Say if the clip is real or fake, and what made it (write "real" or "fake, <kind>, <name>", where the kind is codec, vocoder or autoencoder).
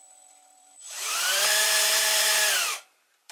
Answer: fake, vocoder, BigVGAN v2